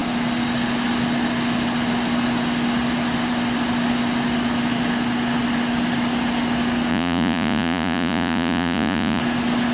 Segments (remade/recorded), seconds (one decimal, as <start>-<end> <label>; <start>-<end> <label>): 0.0-6.9 recorded; 6.9-9.2 remade; 9.2-9.7 recorded